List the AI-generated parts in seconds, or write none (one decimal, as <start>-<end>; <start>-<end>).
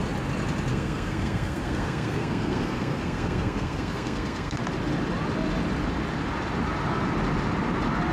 0.7-4.6